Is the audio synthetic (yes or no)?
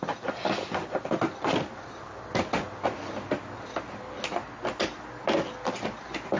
no